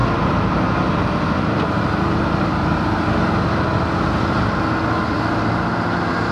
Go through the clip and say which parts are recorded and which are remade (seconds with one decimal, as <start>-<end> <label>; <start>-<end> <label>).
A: 0.0-6.3 recorded

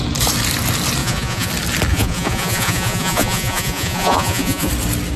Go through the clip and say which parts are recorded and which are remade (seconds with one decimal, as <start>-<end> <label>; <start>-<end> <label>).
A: 0.0-1.0 recorded; 1.0-1.5 remade; 1.5-1.9 recorded; 1.9-4.7 remade; 4.7-5.2 recorded

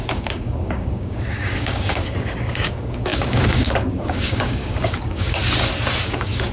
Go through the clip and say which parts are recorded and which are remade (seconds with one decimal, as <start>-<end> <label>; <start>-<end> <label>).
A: 0.0-5.4 remade; 5.4-6.0 recorded; 6.0-6.5 remade

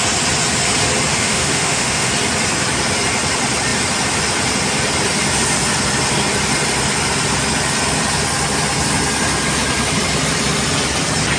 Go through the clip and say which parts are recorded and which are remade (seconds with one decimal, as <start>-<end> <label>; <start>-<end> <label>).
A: 0.0-1.1 recorded; 1.1-2.1 remade; 2.1-11.4 recorded